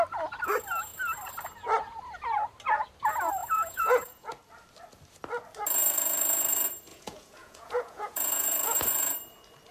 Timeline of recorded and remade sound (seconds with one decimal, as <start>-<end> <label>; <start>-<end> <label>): 0.0-3.4 recorded; 3.4-4.3 remade; 4.3-6.9 recorded; 6.9-9.1 remade; 9.1-9.7 recorded